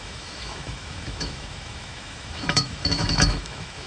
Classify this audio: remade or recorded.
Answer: remade